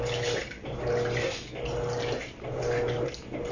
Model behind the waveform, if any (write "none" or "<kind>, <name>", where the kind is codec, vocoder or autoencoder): none